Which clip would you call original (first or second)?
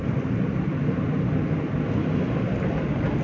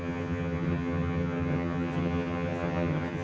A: first